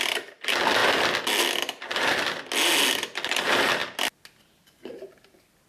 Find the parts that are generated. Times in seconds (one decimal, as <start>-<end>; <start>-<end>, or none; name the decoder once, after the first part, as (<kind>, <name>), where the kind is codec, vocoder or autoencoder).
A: none